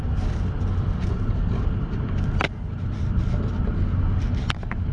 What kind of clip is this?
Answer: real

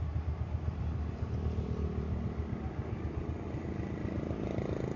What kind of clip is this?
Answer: real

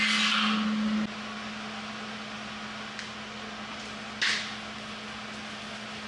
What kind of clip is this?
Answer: real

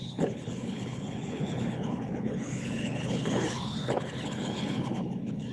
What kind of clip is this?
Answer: fake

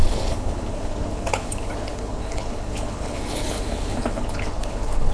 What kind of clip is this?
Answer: fake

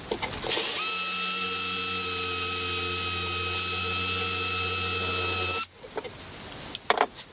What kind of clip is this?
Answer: real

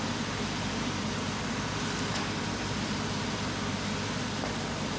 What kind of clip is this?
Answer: real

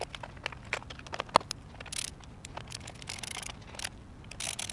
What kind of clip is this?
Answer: real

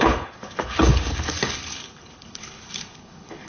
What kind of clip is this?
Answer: fake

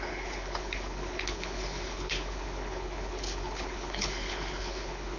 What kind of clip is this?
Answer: fake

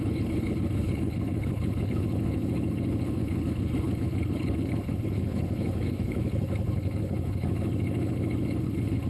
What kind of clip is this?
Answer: fake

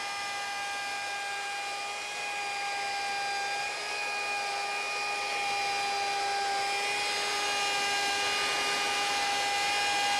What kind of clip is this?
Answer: real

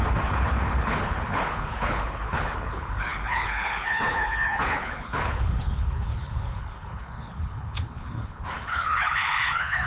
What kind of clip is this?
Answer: fake